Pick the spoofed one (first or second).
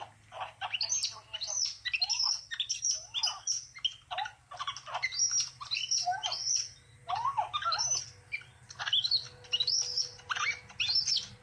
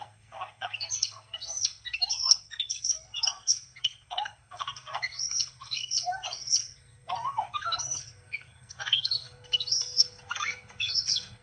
second